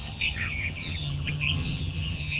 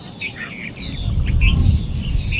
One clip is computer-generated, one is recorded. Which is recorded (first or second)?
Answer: second